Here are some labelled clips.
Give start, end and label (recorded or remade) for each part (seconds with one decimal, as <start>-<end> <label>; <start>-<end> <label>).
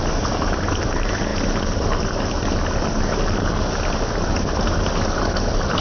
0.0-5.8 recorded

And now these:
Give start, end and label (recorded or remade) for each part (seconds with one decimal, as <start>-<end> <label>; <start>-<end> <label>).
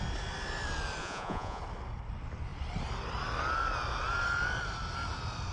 0.0-1.0 recorded; 1.0-1.6 remade; 1.6-5.5 recorded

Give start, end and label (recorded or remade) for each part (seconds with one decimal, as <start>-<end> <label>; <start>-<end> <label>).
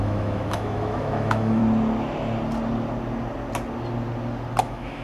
0.0-1.6 remade; 1.6-4.6 recorded; 4.6-5.0 remade